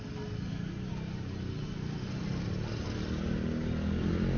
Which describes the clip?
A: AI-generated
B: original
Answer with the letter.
B